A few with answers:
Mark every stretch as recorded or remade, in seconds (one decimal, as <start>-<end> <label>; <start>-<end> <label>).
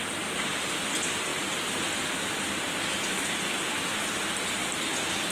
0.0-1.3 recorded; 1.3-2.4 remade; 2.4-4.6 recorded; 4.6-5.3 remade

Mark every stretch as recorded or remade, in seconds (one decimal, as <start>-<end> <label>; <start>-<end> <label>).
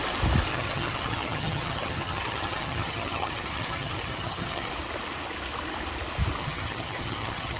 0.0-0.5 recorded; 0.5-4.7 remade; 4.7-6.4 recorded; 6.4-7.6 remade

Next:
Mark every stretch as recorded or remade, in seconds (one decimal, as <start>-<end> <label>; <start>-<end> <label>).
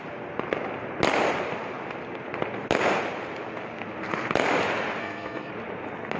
0.0-5.0 recorded; 5.0-5.5 remade; 5.5-6.2 recorded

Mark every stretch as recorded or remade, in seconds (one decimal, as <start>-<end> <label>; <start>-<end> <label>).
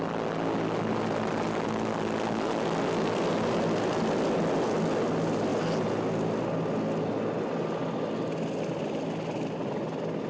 0.0-10.3 recorded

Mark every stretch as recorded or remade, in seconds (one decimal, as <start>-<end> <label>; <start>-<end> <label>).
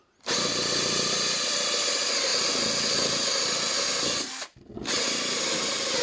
0.0-6.0 recorded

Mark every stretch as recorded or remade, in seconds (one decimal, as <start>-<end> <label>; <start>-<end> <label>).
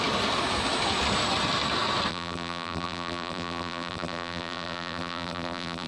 0.0-2.1 recorded; 2.1-5.9 remade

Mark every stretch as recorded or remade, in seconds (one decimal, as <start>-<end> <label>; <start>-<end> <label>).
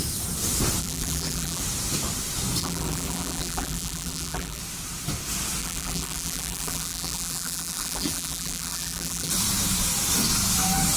0.0-0.8 recorded; 0.8-1.6 remade; 1.6-2.6 recorded; 2.6-4.6 remade; 4.6-5.6 recorded; 5.6-9.3 remade; 9.3-11.0 recorded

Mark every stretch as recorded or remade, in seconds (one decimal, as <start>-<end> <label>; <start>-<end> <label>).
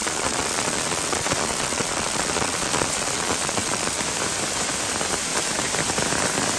0.0-4.0 remade; 4.0-6.6 recorded